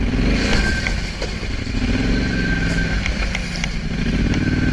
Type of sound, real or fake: real